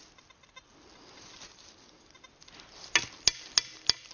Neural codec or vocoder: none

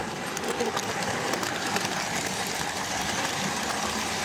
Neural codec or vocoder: none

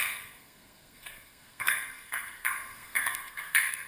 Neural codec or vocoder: codec, SNAC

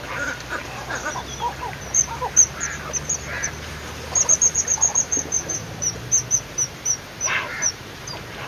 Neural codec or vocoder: vocoder, BigVGAN v2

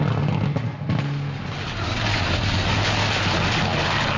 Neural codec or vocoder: none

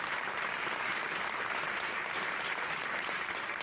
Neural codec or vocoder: vocoder, BigVGAN v2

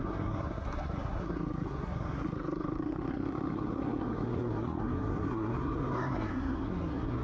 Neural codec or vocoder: codec, SNAC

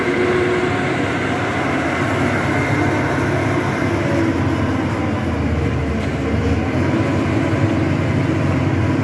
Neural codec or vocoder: none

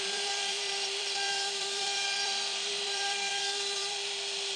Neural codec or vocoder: vocoder, BigVGAN v2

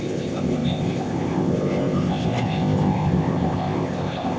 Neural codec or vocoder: codec, ZipCodec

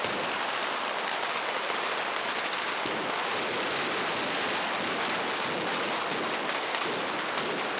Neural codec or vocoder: none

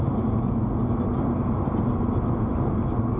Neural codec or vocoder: none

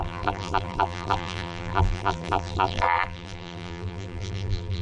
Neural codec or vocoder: vocoder, BigVGAN v2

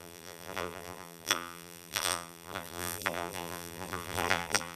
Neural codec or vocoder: vocoder, BigVGAN v2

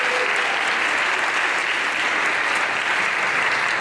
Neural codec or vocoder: none